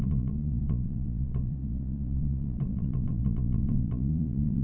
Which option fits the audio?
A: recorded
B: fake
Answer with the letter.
B